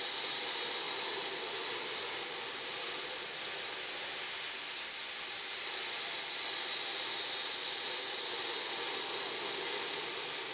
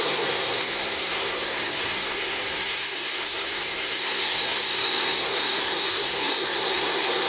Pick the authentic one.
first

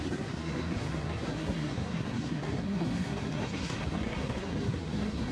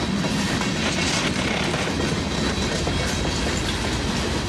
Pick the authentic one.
second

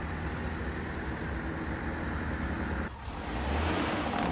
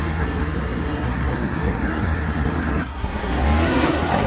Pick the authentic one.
first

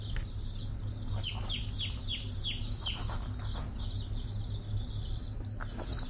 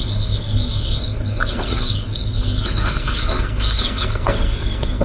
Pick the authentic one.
first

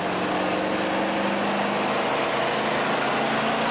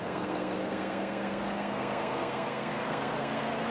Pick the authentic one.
first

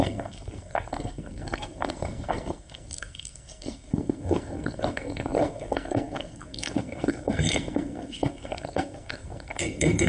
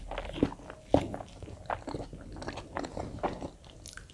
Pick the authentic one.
second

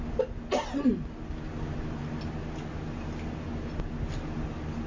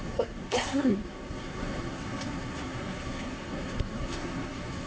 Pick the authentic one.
first